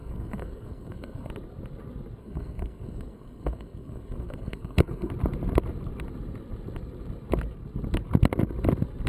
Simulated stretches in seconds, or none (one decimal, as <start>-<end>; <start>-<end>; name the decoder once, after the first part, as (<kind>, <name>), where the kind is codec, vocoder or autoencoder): 0.0-1.3 (codec, SNAC); 2.2-5.1